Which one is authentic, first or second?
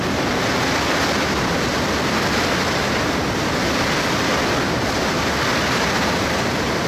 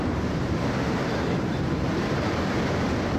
first